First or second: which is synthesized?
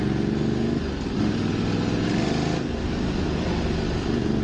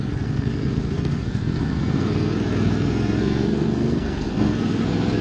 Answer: second